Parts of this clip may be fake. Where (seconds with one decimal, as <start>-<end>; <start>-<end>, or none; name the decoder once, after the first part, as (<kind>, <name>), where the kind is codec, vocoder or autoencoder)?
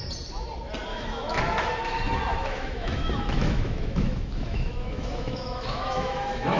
0.9-1.4 (autoencoder, DAC-VAE); 2.3-6.6